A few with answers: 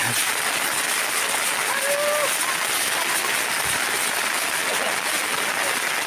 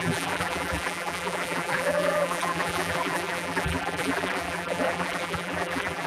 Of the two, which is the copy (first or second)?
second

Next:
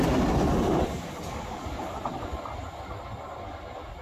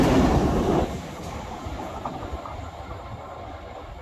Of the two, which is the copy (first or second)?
second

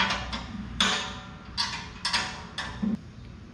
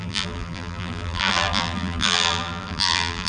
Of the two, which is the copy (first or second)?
second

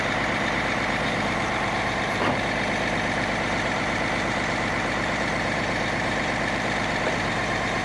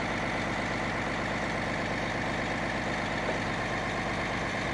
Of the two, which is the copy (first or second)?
first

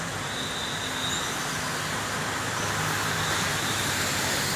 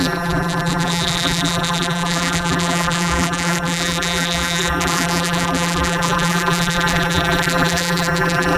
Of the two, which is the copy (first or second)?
second